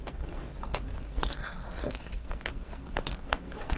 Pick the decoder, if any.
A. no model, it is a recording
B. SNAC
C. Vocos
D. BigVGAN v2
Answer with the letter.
B